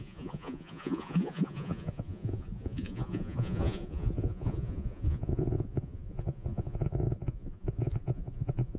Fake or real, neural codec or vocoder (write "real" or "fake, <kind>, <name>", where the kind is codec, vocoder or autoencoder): fake, vocoder, Vocos